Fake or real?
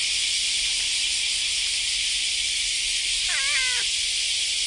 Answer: real